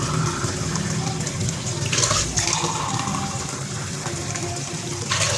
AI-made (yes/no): no